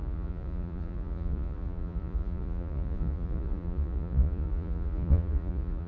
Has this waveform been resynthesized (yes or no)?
yes